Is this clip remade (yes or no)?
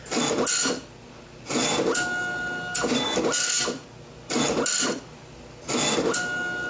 no